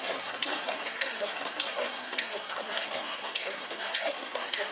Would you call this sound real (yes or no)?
no